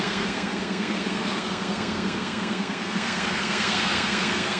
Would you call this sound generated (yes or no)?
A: yes